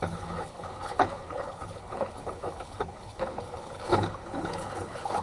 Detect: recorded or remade remade